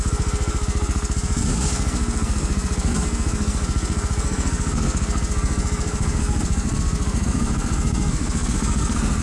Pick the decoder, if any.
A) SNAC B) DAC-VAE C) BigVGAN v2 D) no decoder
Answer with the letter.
A